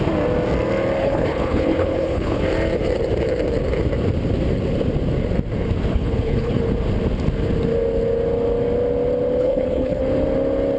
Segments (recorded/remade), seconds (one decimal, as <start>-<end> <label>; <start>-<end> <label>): 0.0-1.0 recorded; 1.0-2.4 remade; 2.4-5.9 recorded; 5.9-6.6 remade; 6.6-9.4 recorded; 9.4-10.0 remade; 10.0-10.8 recorded